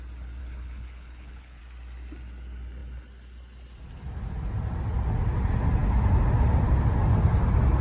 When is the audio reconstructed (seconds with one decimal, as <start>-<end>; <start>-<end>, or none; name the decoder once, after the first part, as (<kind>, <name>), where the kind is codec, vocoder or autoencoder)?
0.4-1.6 (codec, HILCodec)